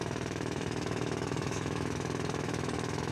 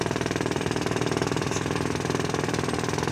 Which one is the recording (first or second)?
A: second